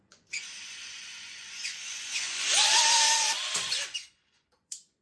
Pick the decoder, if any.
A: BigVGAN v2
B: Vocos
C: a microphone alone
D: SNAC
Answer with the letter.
B